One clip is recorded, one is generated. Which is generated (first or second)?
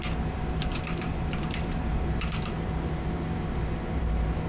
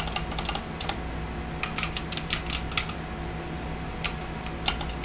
first